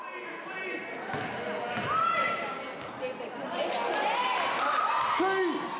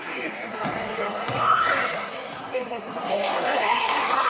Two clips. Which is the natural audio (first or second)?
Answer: first